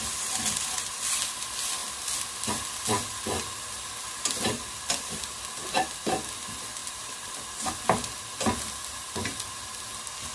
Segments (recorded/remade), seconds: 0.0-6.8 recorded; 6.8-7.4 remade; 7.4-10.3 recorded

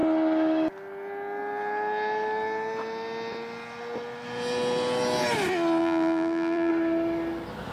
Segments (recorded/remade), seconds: 0.0-5.8 recorded; 5.8-6.7 remade; 6.7-7.7 recorded

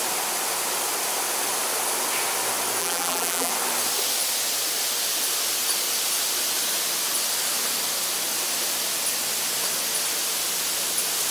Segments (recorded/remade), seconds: 0.0-2.8 recorded; 2.8-3.5 remade; 3.5-11.3 recorded

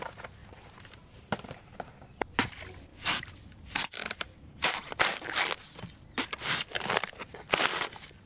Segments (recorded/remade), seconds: 0.0-0.4 recorded; 0.4-1.9 remade; 1.9-2.9 recorded; 2.9-5.0 remade; 5.0-8.3 recorded

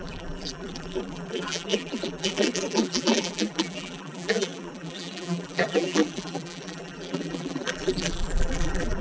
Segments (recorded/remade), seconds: 0.0-9.0 remade

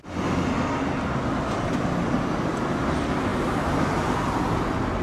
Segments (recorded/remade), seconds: 0.0-3.3 recorded; 3.3-4.1 remade; 4.1-5.0 recorded

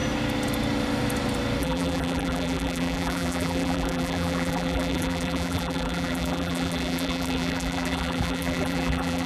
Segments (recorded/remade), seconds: 0.0-1.6 recorded; 1.6-9.3 remade

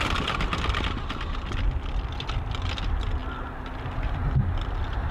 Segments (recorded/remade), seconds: 0.0-5.1 recorded